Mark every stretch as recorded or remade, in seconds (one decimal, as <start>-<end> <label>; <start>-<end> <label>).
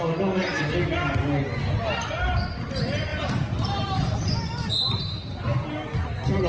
0.0-3.1 recorded; 3.1-4.3 remade; 4.3-6.5 recorded